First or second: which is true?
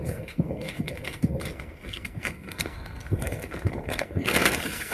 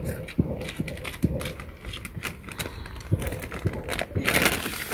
second